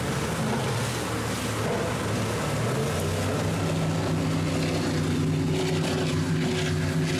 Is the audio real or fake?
real